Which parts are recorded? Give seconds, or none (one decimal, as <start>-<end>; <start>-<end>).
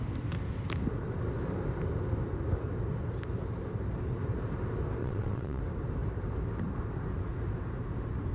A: 0.0-5.0; 5.6-8.3